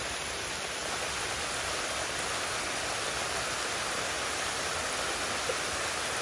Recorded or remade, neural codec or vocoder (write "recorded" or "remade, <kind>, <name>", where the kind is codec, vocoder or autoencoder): recorded